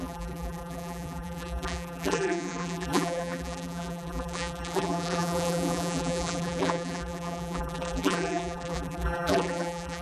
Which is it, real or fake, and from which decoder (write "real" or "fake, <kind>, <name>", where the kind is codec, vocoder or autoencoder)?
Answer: fake, vocoder, BigVGAN v2